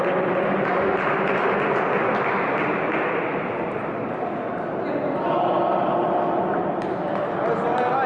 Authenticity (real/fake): real